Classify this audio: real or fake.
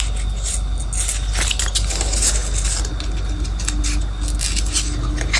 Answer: real